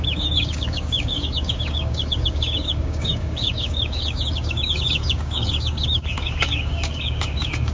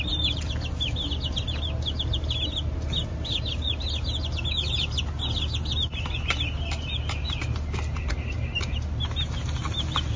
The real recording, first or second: second